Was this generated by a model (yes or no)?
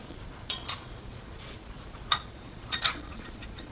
yes